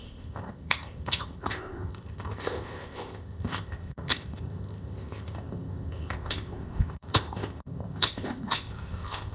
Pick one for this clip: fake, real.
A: fake